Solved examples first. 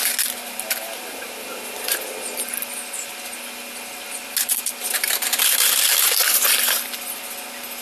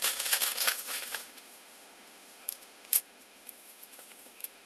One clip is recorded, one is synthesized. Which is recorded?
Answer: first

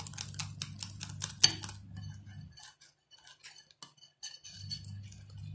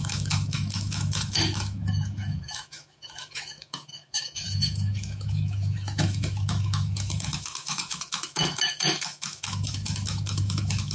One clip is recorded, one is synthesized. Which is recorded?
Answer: first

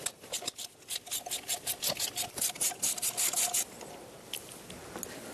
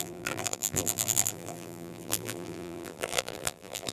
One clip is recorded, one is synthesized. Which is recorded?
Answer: first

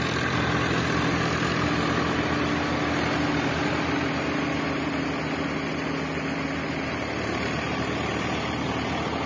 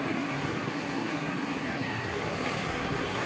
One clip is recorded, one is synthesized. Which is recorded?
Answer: first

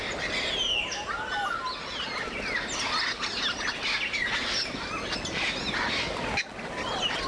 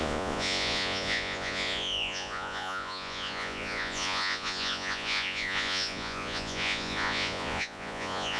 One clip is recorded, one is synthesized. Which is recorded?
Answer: first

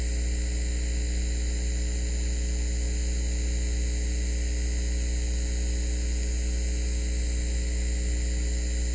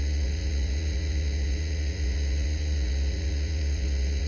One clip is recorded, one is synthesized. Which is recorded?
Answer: first